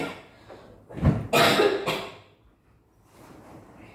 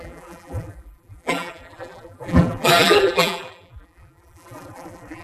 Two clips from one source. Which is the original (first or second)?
first